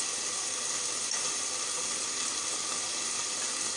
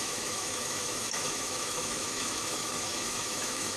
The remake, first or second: second